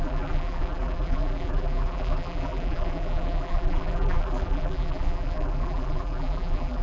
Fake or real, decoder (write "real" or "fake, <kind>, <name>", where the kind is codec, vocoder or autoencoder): fake, vocoder, BigVGAN v2